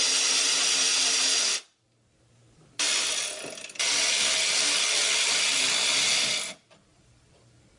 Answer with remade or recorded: recorded